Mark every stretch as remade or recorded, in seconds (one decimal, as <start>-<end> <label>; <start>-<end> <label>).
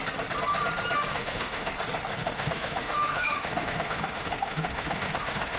0.0-1.1 recorded; 1.1-1.7 remade; 1.7-2.2 recorded; 2.2-5.6 remade